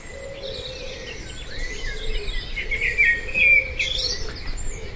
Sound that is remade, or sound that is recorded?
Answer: recorded